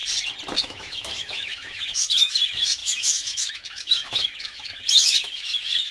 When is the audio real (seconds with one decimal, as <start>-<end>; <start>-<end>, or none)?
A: 0.0-0.6